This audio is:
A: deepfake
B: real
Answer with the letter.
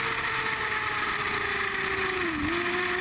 B